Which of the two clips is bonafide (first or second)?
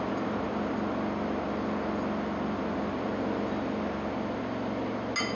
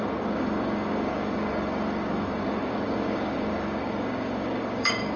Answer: first